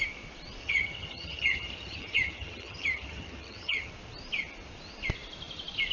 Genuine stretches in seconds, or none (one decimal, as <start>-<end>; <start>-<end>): 0.0-0.6; 3.9-5.9